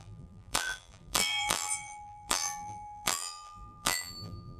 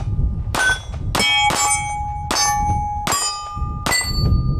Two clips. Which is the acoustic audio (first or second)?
second